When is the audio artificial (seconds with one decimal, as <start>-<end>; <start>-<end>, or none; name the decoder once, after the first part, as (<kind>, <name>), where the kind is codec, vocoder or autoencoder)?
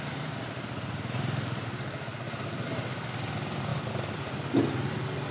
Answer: 2.1-2.7 (vocoder, BigVGAN v2); 3.7-4.6